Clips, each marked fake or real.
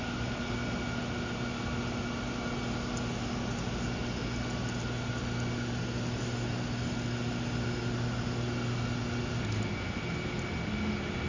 real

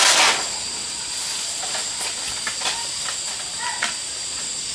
real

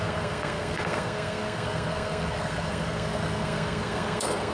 fake